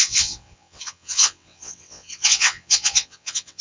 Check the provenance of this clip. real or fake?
fake